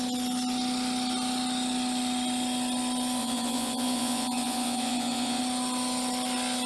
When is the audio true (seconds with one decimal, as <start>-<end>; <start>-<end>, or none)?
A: 0.0-3.2; 5.4-6.7